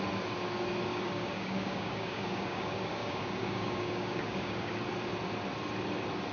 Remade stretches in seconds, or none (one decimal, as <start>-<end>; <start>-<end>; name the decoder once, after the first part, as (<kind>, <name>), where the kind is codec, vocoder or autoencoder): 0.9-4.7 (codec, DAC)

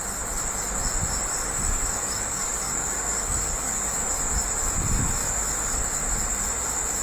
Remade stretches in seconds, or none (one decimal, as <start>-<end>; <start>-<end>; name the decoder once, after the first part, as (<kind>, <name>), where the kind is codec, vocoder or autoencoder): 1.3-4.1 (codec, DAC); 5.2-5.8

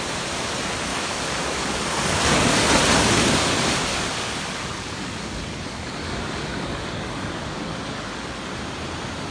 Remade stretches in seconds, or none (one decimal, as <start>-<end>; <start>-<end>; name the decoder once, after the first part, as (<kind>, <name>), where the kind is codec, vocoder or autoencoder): 0.9-2.7 (codec, DAC); 3.9-8.4

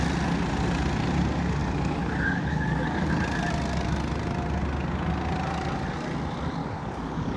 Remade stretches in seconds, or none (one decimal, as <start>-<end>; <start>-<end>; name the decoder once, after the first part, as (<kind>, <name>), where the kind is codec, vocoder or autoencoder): 1.6-3.1 (codec, DAC); 6.6-7.4

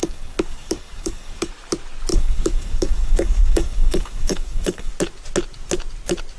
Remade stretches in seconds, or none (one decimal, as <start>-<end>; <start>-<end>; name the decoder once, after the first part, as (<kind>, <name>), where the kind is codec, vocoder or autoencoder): 0.0-1.5 (codec, DAC); 2.1-4.9

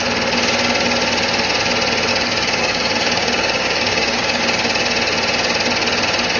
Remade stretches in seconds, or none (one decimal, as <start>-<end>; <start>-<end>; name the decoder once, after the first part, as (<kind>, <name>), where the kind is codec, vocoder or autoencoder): 2.1-4.4 (codec, DAC)